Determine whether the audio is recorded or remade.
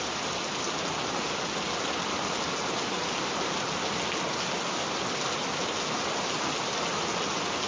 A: recorded